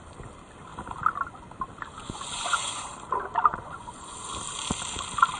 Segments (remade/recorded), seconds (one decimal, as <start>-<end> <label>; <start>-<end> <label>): 0.0-2.0 recorded; 2.0-2.9 remade; 2.9-3.5 recorded; 3.5-4.3 remade; 4.3-5.4 recorded